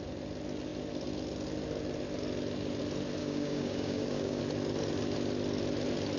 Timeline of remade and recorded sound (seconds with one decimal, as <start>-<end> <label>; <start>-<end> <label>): 0.0-3.2 recorded; 3.2-4.4 remade; 4.4-6.2 recorded